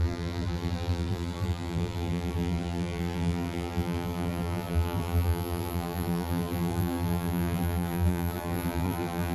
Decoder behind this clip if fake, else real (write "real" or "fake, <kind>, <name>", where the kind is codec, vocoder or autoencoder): fake, vocoder, BigVGAN v2